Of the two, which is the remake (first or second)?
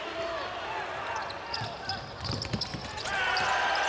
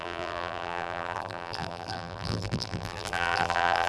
second